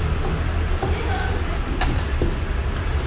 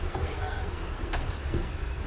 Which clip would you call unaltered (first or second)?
first